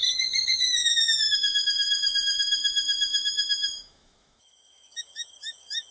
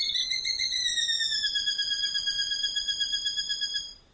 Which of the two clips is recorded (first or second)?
second